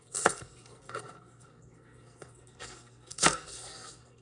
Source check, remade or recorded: remade